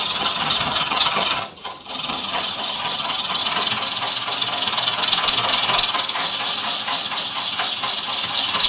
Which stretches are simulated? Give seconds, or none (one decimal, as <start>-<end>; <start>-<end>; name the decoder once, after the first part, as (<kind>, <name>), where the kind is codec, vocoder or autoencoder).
0.0-3.4 (vocoder, HiFi-GAN)